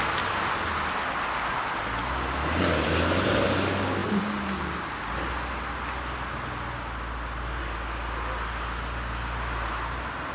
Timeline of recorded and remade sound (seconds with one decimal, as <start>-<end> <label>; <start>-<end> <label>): 0.0-10.3 recorded